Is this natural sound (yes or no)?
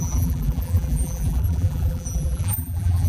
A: no